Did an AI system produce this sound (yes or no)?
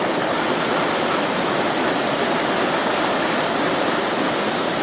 no